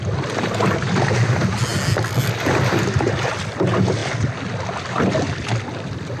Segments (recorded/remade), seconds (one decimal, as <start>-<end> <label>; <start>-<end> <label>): 0.0-6.2 recorded

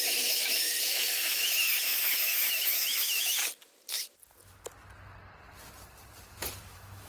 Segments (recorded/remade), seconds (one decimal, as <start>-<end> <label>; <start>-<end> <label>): 0.0-3.4 remade; 3.4-6.6 recorded; 6.6-7.1 remade

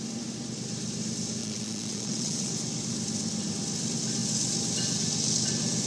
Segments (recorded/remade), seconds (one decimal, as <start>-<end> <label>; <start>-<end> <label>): 0.0-1.4 recorded; 1.4-2.5 remade; 2.5-5.9 recorded

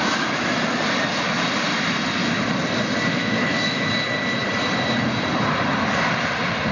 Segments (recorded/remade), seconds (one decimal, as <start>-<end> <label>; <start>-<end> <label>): 0.0-3.1 recorded; 3.1-3.9 remade; 3.9-6.7 recorded

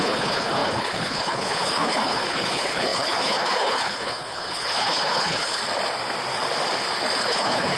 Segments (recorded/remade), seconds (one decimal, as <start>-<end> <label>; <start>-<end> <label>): 0.0-5.6 remade; 5.6-7.2 recorded; 7.2-7.8 remade